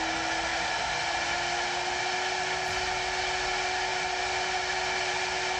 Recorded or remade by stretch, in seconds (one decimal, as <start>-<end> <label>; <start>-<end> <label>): 0.0-5.6 recorded